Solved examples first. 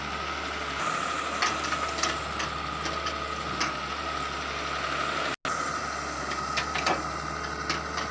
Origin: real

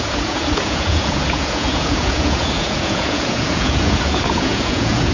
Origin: fake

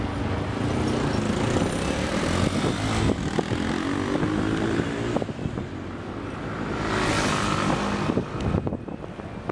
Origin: real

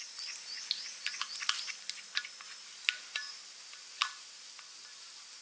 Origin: real